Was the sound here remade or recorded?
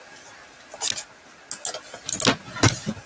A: recorded